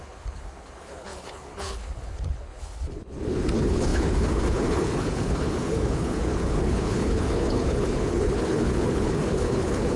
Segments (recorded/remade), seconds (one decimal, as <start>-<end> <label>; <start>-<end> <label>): 0.0-10.0 remade